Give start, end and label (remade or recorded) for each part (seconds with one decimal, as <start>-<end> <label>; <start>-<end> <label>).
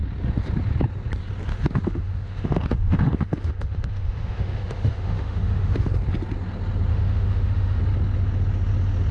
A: 0.0-1.5 recorded; 1.5-5.9 remade; 5.9-6.9 recorded; 6.9-7.8 remade; 7.8-9.1 recorded